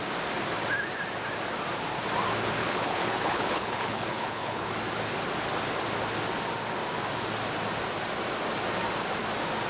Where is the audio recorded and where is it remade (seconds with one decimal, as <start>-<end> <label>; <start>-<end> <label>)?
0.0-2.6 recorded; 2.6-4.7 remade; 4.7-9.7 recorded